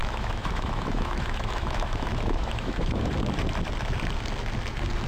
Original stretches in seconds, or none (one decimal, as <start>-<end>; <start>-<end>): 3.1-5.1